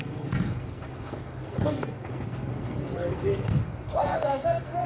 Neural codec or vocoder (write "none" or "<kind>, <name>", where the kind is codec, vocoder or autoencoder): codec, SNAC